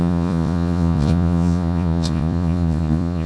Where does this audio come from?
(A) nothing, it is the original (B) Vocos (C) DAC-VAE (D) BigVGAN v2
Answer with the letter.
B